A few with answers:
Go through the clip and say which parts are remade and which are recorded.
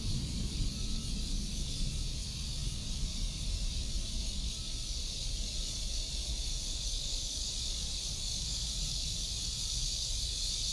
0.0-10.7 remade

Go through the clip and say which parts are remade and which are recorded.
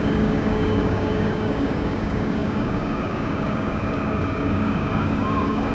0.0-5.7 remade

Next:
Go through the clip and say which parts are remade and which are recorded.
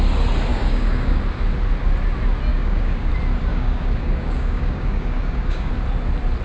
0.0-0.5 recorded; 0.5-1.2 remade; 1.2-2.5 recorded; 2.5-3.1 remade; 3.1-3.5 recorded; 3.5-5.7 remade; 5.7-6.4 recorded